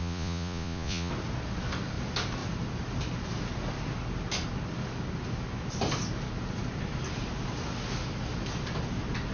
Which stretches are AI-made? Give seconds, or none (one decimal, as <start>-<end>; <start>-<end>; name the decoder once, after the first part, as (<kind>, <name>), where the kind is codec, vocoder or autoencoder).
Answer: 0.0-1.1 (vocoder, Vocos)